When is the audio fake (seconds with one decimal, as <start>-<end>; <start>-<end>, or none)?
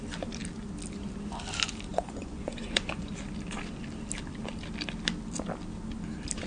1.9-3.1